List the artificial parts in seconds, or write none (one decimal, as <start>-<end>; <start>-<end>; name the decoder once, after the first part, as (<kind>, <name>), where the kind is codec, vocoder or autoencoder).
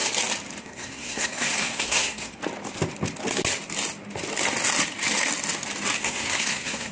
0.6-2.4 (codec, SNAC); 6.0-6.9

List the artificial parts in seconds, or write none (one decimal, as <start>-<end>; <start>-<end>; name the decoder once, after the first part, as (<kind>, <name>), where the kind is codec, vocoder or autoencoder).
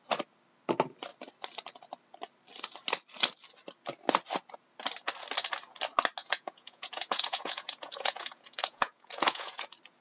6.2-9.6 (vocoder, Vocos)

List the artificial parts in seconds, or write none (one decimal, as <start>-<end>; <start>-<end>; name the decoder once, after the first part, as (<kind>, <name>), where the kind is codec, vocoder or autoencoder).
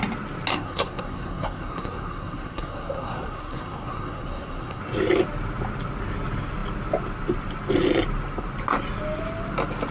0.5-4.8 (codec, SNAC)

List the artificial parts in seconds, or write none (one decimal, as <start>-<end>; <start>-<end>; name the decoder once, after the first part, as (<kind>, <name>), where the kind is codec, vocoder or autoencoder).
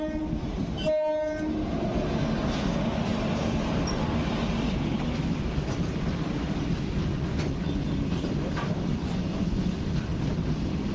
7.1-7.8 (vocoder, Vocos); 9.0-9.6